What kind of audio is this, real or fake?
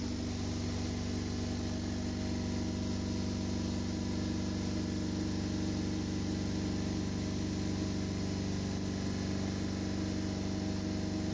real